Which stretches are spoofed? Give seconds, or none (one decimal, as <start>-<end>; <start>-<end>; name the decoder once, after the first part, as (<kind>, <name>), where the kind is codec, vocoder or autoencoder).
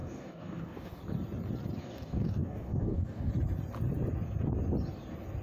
0.0-1.0 (codec, DAC); 1.8-3.3